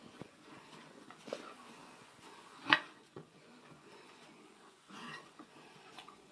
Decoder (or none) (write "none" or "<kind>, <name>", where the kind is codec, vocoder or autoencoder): vocoder, Vocos